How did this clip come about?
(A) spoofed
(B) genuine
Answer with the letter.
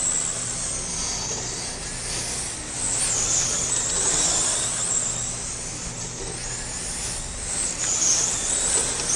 B